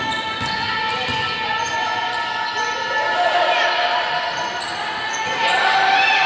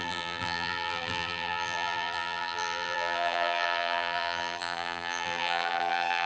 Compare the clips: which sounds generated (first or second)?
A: second